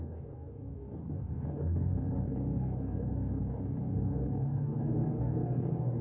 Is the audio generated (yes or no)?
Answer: yes